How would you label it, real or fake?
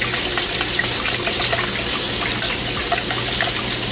real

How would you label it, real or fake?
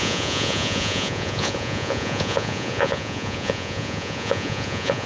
fake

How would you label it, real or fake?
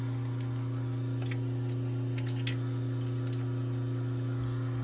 real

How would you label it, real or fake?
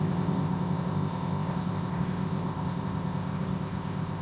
fake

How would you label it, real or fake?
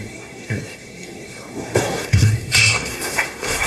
fake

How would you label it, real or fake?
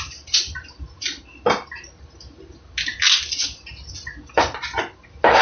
real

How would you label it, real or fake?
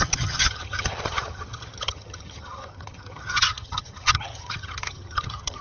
fake